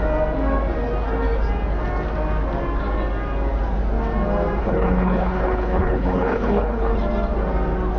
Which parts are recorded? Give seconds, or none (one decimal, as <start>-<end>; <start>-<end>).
0.0-4.6; 6.9-8.0